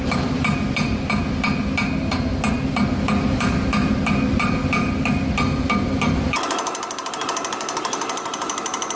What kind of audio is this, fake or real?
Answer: real